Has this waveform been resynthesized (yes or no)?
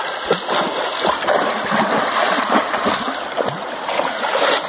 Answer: no